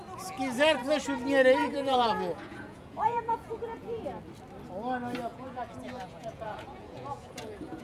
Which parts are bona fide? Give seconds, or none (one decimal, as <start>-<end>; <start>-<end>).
0.0-1.6; 4.0-5.3